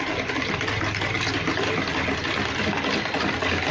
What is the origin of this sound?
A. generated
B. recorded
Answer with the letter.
B